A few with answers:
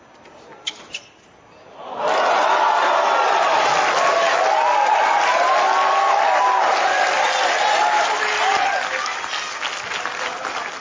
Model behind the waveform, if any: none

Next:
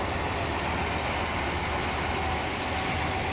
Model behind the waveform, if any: none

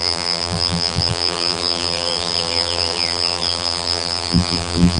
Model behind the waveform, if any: vocoder, BigVGAN v2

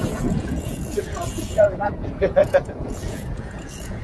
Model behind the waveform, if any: vocoder, Vocos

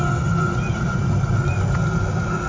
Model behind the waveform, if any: none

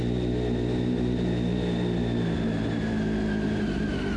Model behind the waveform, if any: none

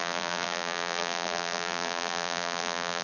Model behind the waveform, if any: vocoder, BigVGAN v2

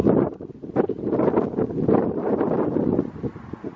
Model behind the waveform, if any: none